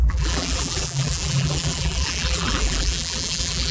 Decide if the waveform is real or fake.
fake